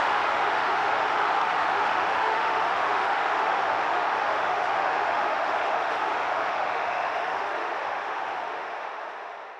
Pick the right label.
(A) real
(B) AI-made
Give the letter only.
B